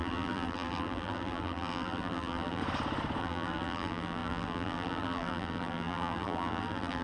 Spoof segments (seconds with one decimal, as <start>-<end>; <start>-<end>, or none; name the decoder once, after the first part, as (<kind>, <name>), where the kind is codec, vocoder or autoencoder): 0.0-2.6 (vocoder, BigVGAN v2); 3.2-7.0